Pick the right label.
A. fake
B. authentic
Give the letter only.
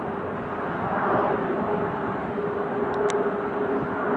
B